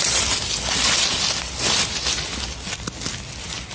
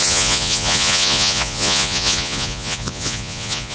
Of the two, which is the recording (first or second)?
first